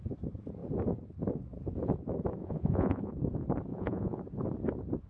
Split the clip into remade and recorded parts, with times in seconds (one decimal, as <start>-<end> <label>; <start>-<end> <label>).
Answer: 0.0-2.4 recorded; 2.4-3.1 remade; 3.1-3.7 recorded; 3.7-4.2 remade; 4.2-5.1 recorded